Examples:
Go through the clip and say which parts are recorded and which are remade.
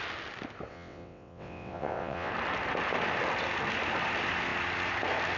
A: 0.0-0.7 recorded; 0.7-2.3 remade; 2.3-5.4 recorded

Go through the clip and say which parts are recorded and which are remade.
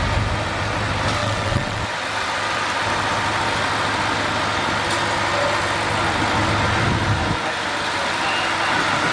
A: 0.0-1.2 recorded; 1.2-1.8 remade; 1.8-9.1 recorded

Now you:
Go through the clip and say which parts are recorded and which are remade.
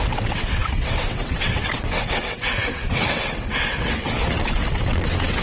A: 0.0-5.4 remade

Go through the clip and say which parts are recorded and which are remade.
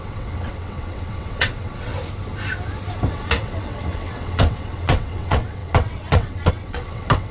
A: 0.0-1.9 remade; 1.9-3.1 recorded; 3.1-7.3 remade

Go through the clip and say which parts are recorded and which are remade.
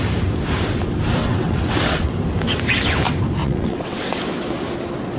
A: 0.0-1.2 recorded; 1.2-2.1 remade; 2.1-3.4 recorded; 3.4-4.2 remade; 4.2-5.2 recorded